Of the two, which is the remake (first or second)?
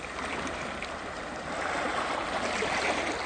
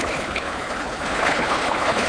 second